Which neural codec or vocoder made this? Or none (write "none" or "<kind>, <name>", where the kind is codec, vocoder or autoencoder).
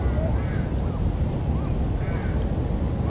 none